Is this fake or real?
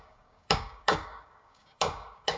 fake